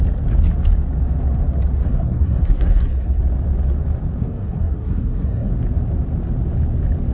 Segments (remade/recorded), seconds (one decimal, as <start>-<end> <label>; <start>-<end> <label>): 0.0-1.7 recorded; 1.7-3.2 remade; 3.2-4.2 recorded; 4.2-5.5 remade; 5.5-7.1 recorded